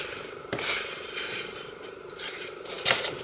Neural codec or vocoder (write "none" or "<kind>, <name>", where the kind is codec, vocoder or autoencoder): vocoder, BigVGAN v2